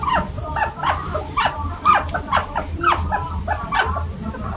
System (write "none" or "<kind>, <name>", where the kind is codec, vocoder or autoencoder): vocoder, BigVGAN v2